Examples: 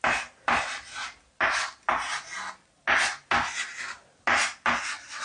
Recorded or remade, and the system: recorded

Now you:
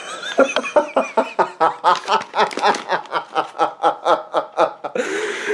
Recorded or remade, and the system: recorded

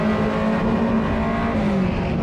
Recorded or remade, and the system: recorded